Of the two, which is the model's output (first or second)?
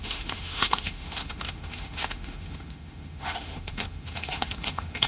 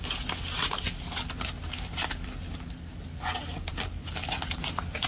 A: first